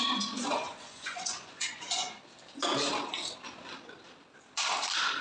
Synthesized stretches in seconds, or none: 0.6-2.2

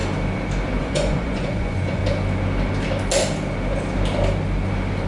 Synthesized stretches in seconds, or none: 0.8-2.0

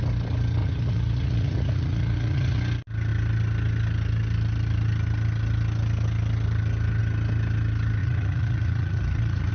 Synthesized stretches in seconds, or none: 0.6-2.6; 8.0-9.5